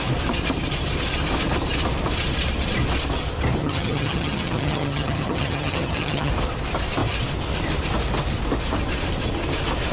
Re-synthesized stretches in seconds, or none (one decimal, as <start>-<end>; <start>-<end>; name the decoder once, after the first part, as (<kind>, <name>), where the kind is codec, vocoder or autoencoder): 3.6-6.3 (vocoder, HiFi-GAN)